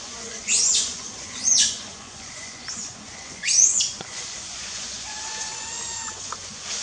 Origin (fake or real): fake